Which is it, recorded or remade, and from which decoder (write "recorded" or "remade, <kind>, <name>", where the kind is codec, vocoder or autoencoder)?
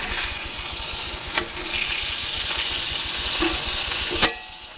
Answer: remade, vocoder, Vocos